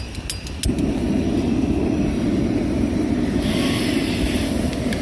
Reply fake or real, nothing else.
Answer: real